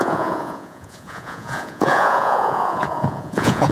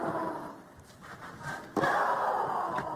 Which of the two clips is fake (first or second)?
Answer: first